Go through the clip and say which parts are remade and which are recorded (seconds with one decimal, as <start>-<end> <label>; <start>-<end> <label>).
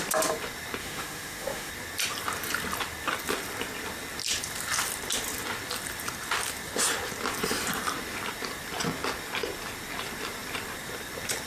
0.0-0.8 recorded; 0.8-1.7 remade; 1.7-11.5 recorded